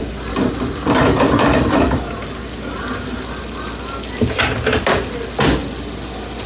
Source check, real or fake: real